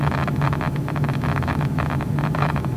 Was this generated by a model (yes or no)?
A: yes